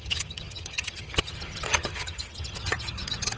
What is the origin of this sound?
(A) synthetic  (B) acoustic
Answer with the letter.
A